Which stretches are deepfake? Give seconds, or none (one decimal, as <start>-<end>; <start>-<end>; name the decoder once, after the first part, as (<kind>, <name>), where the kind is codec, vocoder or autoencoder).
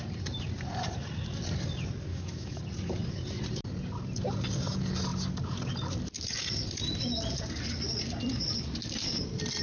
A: 2.1-2.6 (autoencoder, DAC-VAE)